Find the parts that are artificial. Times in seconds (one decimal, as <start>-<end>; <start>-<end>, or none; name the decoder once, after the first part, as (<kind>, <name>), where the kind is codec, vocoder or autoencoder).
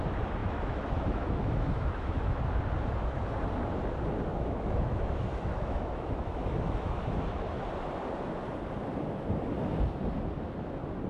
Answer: 0.4-2.4 (autoencoder, DAC-VAE); 4.3-7.5